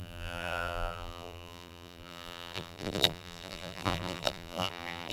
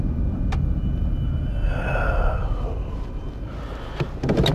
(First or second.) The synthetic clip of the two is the first